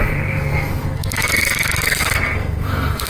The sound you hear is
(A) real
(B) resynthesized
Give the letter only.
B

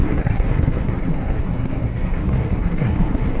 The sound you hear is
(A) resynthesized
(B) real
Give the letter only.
A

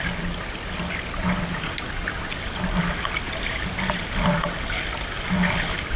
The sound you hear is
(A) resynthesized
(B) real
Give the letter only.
B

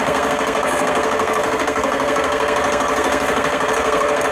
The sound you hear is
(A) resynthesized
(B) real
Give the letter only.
A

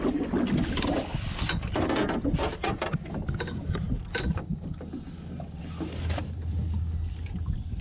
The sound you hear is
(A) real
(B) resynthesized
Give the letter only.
A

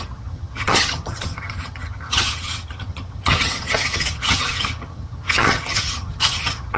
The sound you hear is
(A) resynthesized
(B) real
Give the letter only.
A